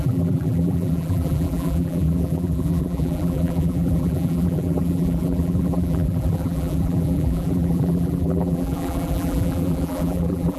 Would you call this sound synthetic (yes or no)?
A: yes